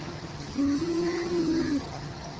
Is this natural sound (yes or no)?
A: no